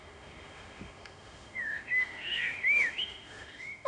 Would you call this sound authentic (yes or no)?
no